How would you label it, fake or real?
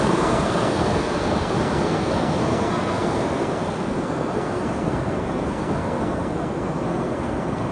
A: fake